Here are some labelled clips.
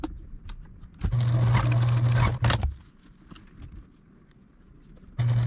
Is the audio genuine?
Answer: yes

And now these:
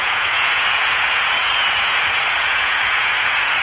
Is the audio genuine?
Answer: no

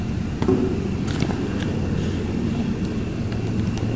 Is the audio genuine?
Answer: yes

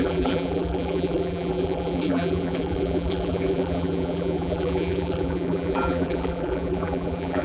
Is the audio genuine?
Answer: no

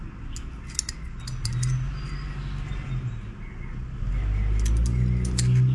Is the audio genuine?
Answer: yes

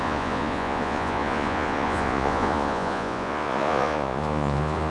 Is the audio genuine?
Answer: no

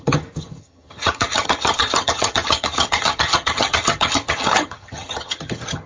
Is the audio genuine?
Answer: no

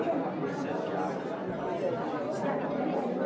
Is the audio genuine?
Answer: yes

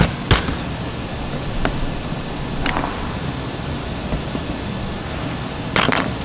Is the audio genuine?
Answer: yes